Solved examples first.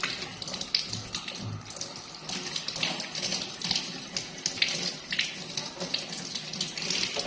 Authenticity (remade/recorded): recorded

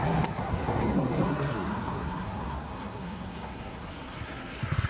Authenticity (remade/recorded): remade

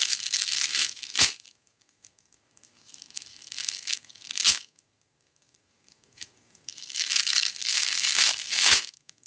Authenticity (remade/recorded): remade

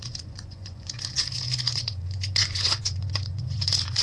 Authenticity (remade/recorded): remade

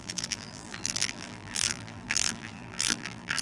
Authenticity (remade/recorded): remade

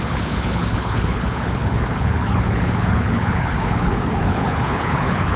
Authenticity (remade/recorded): remade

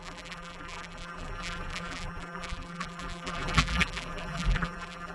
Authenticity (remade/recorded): remade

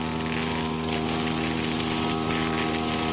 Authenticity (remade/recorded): recorded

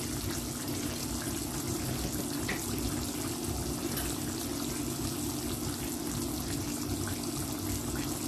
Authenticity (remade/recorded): recorded